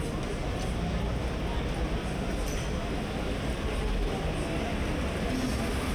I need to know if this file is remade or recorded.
recorded